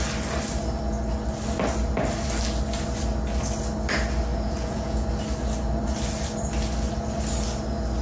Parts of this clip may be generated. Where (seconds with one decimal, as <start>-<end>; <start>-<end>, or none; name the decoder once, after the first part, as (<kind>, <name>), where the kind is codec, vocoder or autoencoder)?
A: 4.3-5.1 (vocoder, Vocos)